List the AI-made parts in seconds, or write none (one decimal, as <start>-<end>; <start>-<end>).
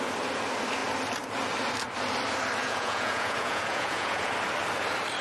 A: 2.6-4.3